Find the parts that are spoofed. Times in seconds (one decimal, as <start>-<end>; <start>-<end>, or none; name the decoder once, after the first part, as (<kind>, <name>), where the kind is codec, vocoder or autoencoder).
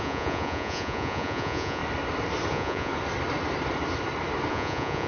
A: 0.0-1.8 (vocoder, Vocos); 2.5-2.9; 4.5-5.1